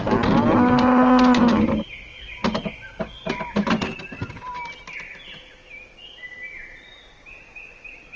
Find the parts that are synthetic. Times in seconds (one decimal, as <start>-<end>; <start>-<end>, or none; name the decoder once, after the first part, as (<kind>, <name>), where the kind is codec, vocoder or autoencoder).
none